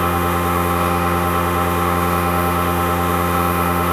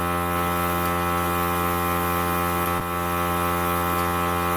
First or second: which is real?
second